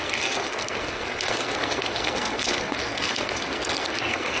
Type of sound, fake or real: fake